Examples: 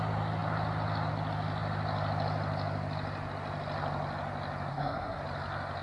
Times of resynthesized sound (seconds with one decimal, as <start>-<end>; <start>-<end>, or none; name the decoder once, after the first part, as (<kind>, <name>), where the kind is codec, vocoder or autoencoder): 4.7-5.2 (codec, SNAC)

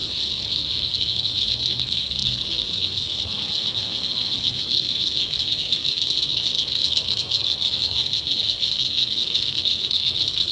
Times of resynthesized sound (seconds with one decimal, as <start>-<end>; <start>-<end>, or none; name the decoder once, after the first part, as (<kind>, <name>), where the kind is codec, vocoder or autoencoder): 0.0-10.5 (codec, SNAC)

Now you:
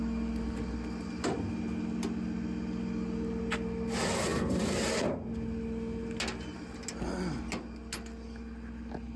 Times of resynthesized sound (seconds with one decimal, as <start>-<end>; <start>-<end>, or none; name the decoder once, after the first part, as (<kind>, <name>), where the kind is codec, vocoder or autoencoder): none